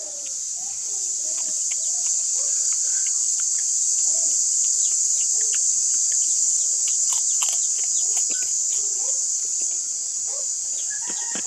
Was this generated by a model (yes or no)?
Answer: no